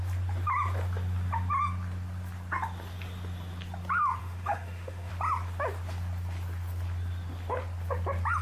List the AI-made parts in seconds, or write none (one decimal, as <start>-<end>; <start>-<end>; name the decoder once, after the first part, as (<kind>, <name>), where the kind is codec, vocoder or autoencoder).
4.2-5.1 (autoencoder, DAC-VAE)